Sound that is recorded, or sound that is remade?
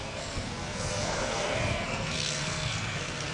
remade